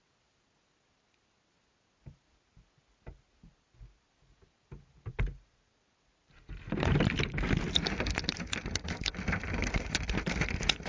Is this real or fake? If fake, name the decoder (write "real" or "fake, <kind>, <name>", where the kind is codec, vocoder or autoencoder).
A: real